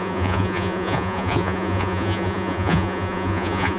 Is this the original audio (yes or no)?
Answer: no